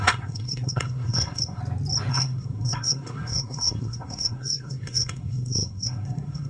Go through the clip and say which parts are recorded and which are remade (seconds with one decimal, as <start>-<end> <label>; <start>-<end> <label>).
0.0-1.6 remade; 1.6-2.1 recorded; 2.1-6.5 remade